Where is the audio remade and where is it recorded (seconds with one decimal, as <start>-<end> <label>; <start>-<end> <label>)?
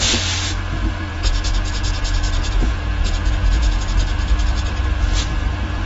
0.0-1.1 recorded; 1.1-3.8 remade; 3.8-5.9 recorded